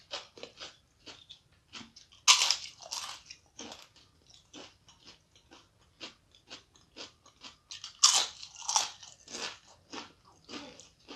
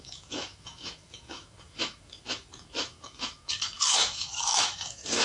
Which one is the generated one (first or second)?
second